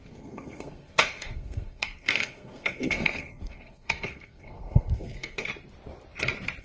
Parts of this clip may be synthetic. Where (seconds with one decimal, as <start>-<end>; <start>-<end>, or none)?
0.0-5.5